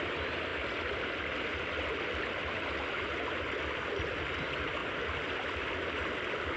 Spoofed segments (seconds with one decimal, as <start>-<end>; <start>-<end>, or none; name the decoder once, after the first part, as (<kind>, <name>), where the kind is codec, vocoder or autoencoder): none